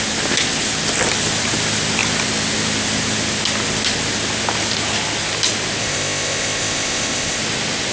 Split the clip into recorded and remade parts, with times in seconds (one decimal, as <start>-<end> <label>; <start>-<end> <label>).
0.0-5.8 recorded; 5.8-7.4 remade; 7.4-7.9 recorded